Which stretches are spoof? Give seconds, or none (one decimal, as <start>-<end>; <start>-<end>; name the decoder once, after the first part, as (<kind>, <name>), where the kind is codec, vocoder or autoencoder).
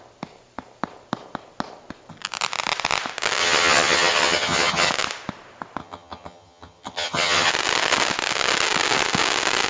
3.4-4.9 (vocoder, HiFi-GAN); 5.8-7.5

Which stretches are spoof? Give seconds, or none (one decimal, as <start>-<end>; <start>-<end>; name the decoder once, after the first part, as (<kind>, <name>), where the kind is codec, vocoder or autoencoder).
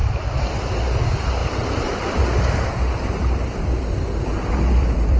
none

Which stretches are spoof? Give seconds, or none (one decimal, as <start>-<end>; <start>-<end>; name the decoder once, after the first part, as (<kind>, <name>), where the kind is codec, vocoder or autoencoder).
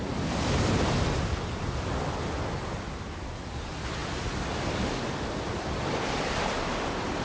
none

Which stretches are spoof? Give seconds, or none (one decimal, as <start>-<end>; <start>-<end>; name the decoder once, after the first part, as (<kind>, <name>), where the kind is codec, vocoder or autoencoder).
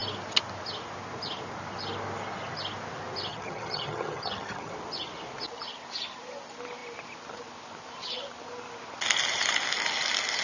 3.3-4.7 (vocoder, HiFi-GAN)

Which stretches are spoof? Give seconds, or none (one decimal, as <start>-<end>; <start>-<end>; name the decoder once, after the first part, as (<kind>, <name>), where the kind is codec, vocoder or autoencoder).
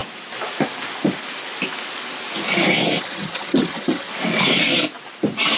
3.0-4.1 (vocoder, HiFi-GAN)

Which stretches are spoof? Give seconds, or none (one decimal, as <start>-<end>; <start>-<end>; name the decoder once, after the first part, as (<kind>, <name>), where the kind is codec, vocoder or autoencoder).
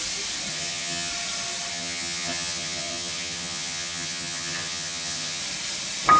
0.5-1.1 (vocoder, HiFi-GAN); 1.7-5.4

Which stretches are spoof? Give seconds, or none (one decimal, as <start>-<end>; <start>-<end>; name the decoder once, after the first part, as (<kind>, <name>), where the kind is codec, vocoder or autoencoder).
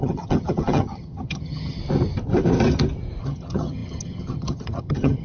0.0-1.8 (vocoder, HiFi-GAN); 3.2-5.2